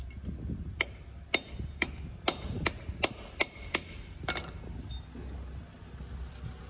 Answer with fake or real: real